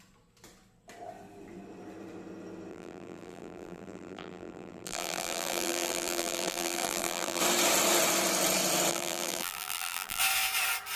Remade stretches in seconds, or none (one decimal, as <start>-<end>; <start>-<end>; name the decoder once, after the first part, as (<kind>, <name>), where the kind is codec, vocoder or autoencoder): 2.7-7.4 (vocoder, BigVGAN v2); 8.9-10.2